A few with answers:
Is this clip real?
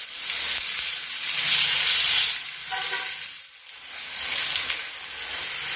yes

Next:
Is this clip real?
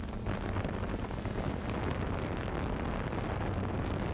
yes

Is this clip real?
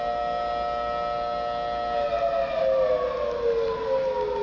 yes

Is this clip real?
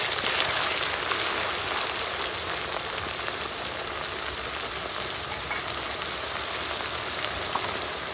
yes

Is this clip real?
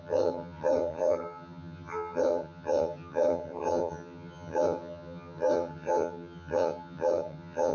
no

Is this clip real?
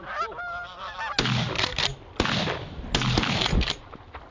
yes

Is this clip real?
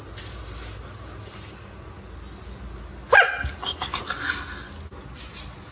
yes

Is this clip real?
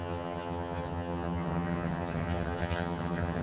no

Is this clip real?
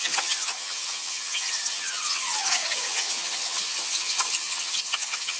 no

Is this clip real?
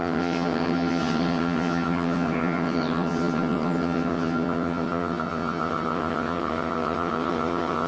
no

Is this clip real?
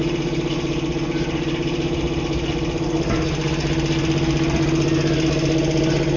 yes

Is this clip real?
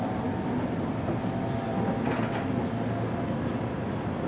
yes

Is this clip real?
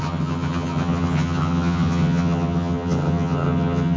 no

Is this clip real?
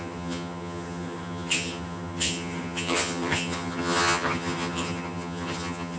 no